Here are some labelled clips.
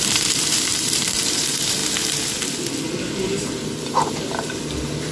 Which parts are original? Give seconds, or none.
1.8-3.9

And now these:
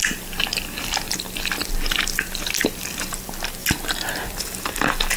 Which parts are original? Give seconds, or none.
0.0-5.2

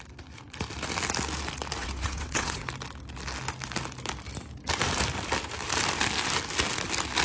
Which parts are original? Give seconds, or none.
0.0-1.8; 2.7-7.2